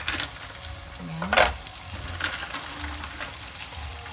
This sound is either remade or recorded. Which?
recorded